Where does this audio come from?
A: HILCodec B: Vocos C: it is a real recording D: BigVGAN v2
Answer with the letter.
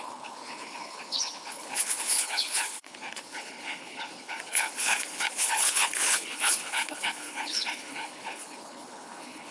A